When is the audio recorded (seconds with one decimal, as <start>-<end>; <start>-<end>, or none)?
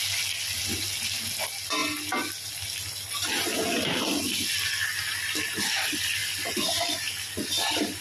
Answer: 0.0-8.0